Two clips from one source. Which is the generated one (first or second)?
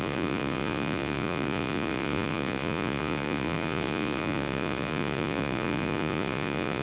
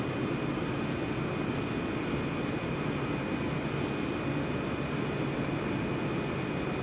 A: first